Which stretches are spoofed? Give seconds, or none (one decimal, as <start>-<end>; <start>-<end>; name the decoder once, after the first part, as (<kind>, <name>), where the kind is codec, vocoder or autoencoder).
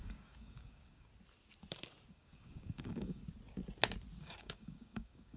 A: 0.0-1.1 (codec, DAC); 2.1-3.2; 4.2-5.4